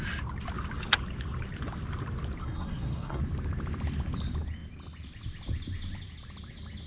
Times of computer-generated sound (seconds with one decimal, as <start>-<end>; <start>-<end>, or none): 2.4-3.2